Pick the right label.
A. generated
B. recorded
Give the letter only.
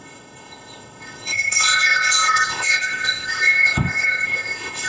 A